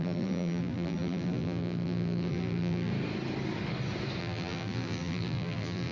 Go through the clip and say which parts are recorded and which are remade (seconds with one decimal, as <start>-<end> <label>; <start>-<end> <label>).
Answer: 0.0-2.9 remade; 2.9-4.2 recorded; 4.2-5.9 remade